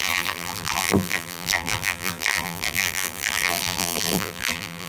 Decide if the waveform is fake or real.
fake